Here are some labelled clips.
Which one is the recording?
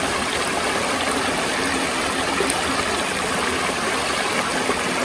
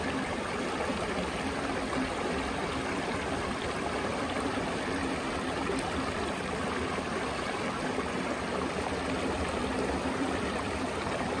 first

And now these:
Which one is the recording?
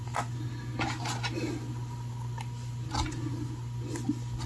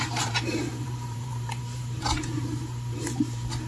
first